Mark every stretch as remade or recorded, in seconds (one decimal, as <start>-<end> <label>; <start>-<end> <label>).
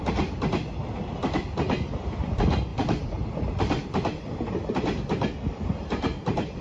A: 0.0-6.6 recorded